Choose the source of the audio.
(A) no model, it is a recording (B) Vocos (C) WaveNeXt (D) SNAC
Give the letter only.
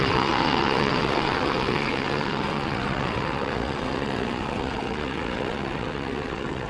C